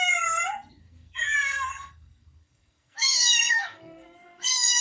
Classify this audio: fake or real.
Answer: fake